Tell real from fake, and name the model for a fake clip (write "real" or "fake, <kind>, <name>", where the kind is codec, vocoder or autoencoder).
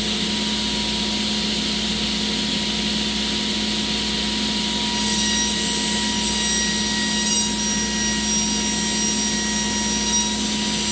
real